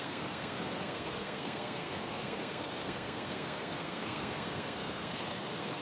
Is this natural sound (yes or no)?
no